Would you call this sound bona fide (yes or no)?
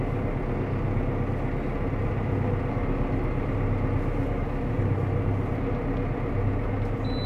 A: yes